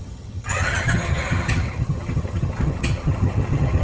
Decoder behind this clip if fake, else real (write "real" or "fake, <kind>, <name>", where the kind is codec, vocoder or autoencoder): fake, vocoder, HiFi-GAN